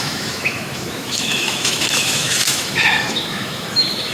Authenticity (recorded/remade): remade